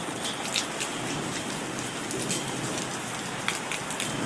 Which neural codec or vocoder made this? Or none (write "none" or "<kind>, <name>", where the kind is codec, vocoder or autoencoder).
none